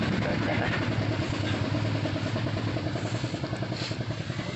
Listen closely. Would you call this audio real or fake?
real